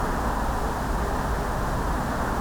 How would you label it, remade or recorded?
recorded